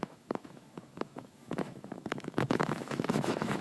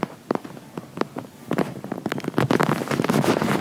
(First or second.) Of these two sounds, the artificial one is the first